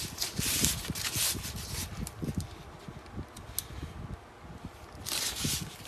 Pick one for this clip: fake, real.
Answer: real